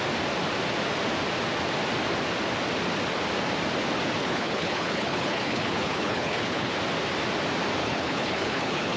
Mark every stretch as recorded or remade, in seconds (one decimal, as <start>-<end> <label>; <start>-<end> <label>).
0.0-4.2 recorded; 4.2-6.7 remade; 6.7-7.8 recorded; 7.8-9.0 remade